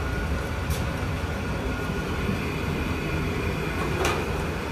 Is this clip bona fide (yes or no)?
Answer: yes